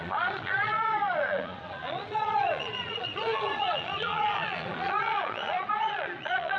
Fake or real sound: fake